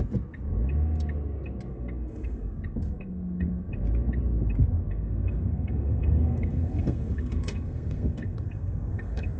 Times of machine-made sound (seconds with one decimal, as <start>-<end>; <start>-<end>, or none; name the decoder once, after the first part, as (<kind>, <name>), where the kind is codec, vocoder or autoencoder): 1.7-3.7 (codec, SNAC); 4.8-9.4